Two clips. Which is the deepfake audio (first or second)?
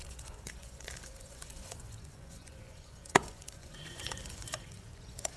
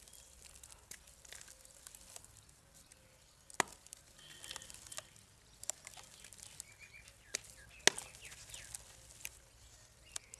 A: first